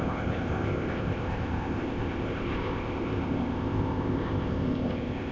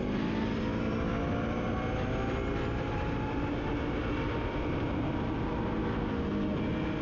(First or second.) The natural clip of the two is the second